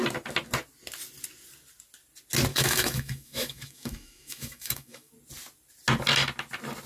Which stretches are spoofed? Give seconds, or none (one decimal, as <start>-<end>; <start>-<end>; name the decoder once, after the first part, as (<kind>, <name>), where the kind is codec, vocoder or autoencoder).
2.5-5.1 (autoencoder, DAC-VAE)